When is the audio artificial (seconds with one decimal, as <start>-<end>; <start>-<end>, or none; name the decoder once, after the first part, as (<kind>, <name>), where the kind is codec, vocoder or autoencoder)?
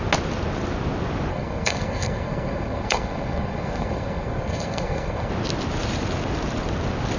1.3-5.3 (codec, SNAC)